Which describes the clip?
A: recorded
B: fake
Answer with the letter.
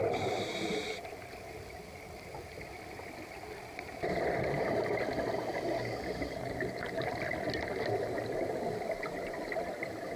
A